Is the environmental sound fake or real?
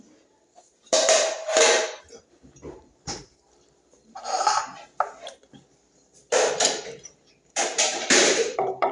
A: fake